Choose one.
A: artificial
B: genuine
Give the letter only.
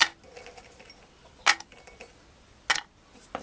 B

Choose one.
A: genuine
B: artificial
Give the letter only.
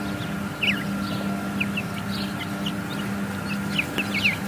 A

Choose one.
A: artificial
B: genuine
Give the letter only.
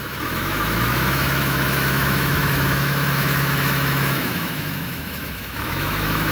A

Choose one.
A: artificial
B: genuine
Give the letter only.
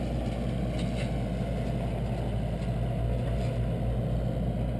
B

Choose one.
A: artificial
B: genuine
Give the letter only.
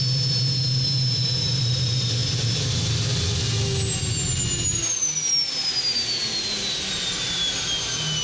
B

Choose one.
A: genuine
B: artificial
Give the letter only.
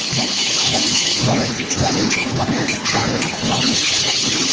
B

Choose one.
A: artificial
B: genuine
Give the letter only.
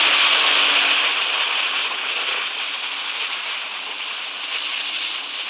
B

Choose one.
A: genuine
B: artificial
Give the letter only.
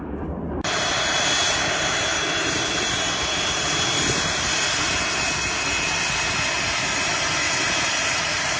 A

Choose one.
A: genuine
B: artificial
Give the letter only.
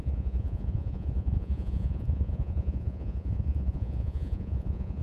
B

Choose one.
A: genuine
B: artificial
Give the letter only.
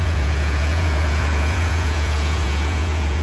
B